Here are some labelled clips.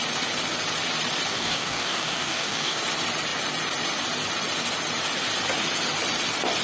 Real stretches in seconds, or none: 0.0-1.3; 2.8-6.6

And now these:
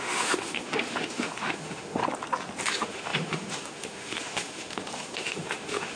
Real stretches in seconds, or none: 2.0-2.6

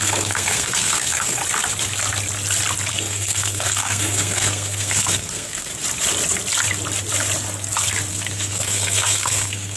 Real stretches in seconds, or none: 1.4-2.9; 5.7-8.1

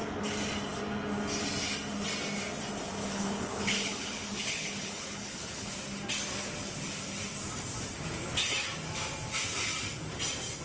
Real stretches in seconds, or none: 0.0-3.0; 5.7-10.6

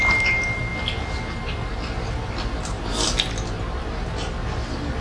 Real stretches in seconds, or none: 0.0-5.0

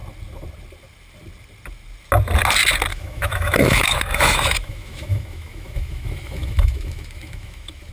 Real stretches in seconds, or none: 0.0-2.9

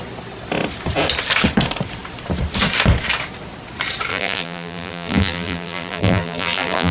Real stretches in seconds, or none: 0.0-4.1

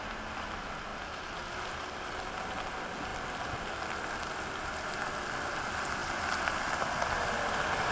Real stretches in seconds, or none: 0.0-7.9